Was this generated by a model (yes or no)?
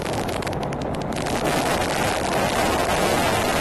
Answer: no